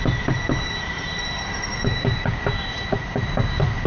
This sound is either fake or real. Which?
fake